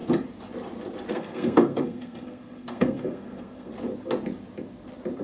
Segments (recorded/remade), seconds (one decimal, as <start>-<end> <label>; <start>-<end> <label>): 0.0-1.1 recorded; 1.1-3.7 remade; 3.7-5.2 recorded